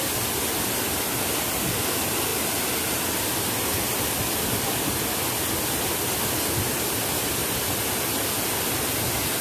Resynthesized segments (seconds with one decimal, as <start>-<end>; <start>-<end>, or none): none